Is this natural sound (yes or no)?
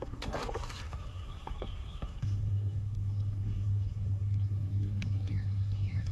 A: no